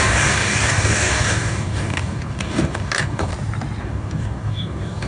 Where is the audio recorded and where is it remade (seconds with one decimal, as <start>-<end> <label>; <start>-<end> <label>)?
0.0-3.3 remade; 3.3-3.8 recorded; 3.8-5.1 remade